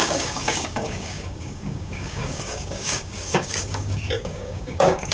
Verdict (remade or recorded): remade